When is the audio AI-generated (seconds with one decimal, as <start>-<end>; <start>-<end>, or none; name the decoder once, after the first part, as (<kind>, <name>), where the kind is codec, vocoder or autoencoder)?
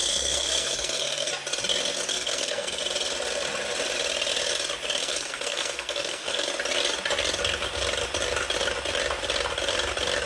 0.0-1.3 (codec, SNAC); 2.1-2.8; 5.0-6.5